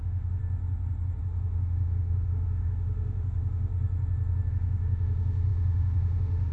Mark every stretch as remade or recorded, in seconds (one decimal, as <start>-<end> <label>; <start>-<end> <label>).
0.0-0.4 remade; 0.4-1.2 recorded; 1.2-3.7 remade; 3.7-4.5 recorded; 4.5-6.5 remade